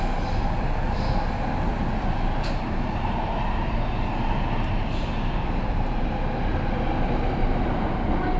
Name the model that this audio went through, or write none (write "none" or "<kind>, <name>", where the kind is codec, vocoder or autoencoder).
none